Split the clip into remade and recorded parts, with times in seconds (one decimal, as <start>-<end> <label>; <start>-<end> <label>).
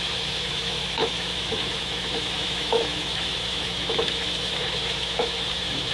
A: 0.0-5.9 remade